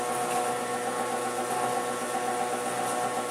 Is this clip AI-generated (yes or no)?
no